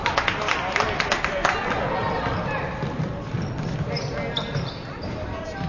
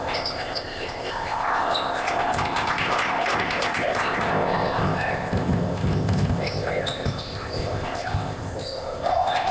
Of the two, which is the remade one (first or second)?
second